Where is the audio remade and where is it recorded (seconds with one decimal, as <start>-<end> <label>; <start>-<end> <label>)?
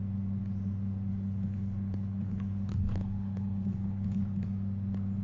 0.0-1.1 recorded; 1.1-4.2 remade; 4.2-5.2 recorded